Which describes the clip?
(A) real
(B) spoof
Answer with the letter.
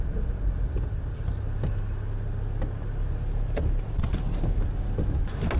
A